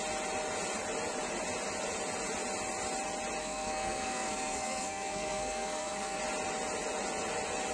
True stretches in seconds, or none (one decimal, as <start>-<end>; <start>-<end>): 0.0-3.4; 6.2-7.7